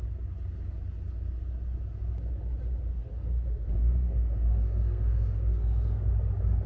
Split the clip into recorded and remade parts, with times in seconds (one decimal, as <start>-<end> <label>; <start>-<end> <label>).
0.0-2.9 recorded; 2.9-6.1 remade; 6.1-6.7 recorded